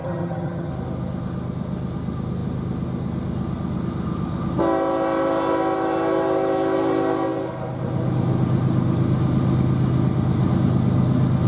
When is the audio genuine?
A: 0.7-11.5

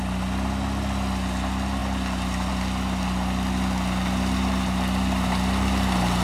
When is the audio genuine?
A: 0.0-6.2